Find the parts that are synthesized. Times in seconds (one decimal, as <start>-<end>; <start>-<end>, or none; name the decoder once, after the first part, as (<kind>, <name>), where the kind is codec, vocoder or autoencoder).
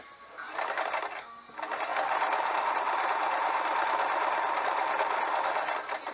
none